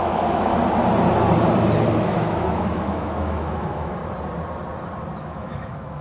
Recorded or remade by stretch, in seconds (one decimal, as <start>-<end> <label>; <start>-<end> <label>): 0.0-0.5 remade; 0.5-1.9 recorded; 1.9-4.0 remade; 4.0-5.2 recorded; 5.2-6.0 remade